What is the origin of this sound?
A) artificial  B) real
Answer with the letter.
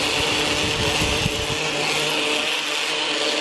B